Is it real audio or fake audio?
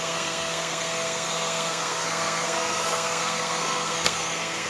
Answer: fake